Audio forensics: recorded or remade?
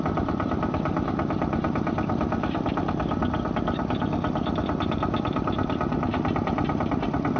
recorded